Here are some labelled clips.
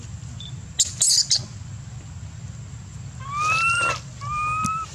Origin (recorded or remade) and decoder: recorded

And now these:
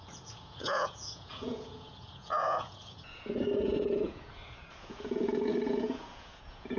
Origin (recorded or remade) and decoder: remade, vocoder, Vocos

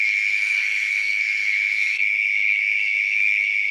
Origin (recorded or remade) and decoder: remade, codec, SNAC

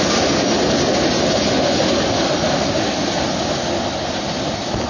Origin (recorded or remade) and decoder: recorded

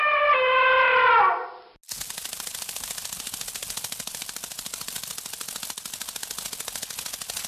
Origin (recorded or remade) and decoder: recorded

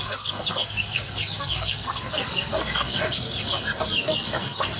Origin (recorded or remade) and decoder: remade, codec, SNAC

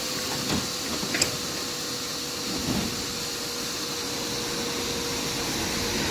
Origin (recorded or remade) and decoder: recorded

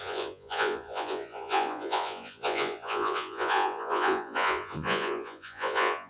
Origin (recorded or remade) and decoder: remade, vocoder, Vocos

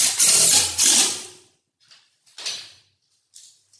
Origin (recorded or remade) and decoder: recorded